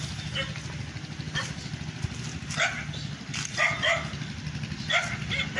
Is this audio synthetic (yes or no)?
no